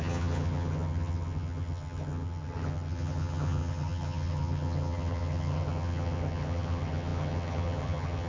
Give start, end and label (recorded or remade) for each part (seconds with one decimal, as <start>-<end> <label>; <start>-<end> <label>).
0.0-8.3 remade